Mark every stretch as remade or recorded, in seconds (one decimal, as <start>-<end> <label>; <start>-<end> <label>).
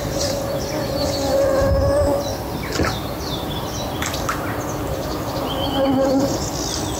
0.0-7.0 recorded